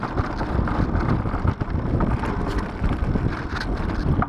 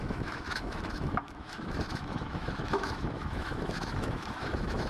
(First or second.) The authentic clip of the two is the first